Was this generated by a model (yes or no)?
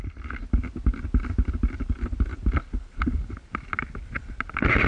no